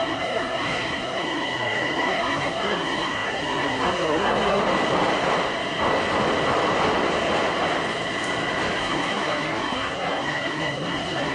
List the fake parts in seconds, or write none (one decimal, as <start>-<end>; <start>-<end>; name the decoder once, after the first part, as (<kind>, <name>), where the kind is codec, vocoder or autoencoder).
0.0-4.6 (codec, SNAC); 8.8-11.3